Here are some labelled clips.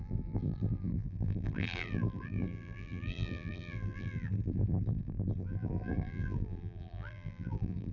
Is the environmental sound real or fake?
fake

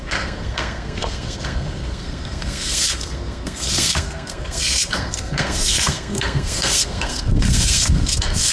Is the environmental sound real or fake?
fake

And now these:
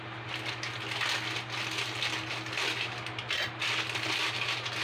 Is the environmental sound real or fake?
real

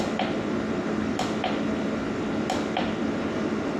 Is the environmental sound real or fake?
real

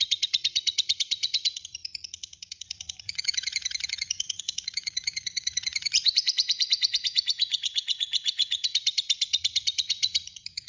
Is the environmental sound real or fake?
fake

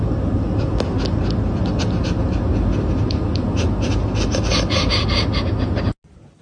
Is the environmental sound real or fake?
real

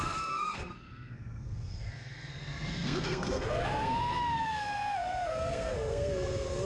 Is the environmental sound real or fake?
fake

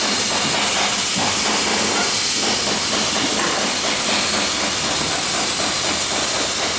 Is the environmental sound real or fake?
real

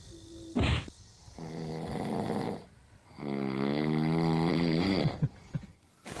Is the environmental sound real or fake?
real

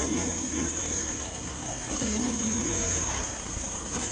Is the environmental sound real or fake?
fake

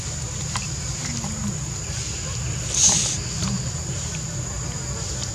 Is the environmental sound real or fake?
real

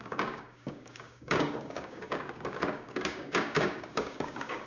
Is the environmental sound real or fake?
fake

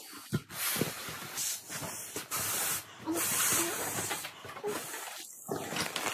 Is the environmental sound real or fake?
real